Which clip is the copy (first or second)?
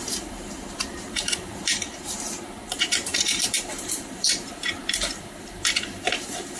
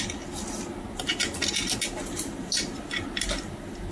first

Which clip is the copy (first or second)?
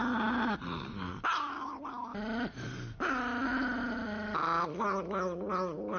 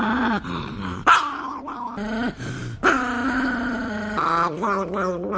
second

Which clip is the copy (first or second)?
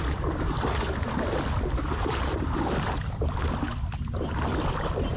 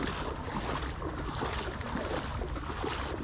first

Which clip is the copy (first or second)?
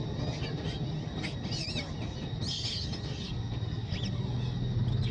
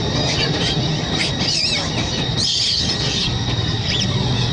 second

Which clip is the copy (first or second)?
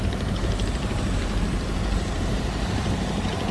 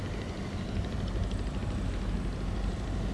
first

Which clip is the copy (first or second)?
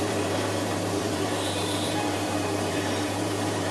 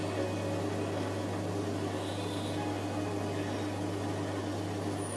first